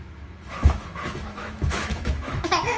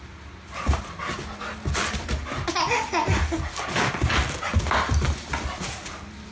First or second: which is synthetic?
first